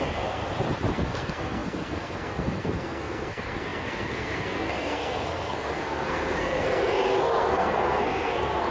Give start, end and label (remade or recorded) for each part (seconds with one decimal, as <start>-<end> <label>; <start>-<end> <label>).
0.0-0.4 remade; 0.4-0.9 recorded; 0.9-8.7 remade